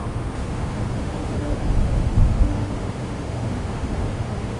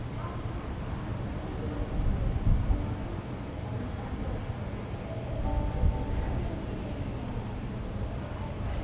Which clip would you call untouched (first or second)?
second